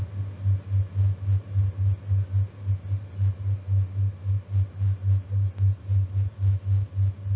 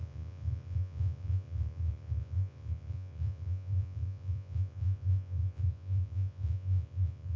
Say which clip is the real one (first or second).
first